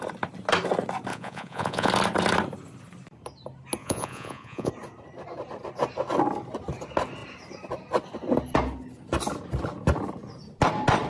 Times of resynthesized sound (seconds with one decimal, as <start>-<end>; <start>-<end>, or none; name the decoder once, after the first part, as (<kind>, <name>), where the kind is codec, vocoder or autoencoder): 1.1-1.9 (vocoder, Vocos); 3.8-4.7